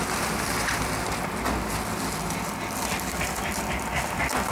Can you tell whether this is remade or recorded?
recorded